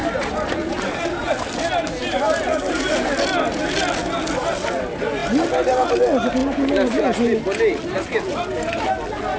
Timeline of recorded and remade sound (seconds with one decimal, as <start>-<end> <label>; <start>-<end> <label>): 0.0-1.3 remade; 1.3-2.0 recorded; 2.0-2.9 remade; 2.9-9.4 recorded